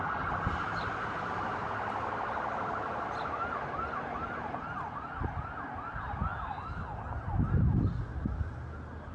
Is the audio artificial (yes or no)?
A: no